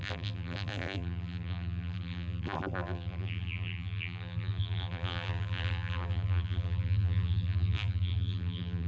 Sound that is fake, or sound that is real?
fake